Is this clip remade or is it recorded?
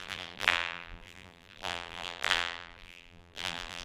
remade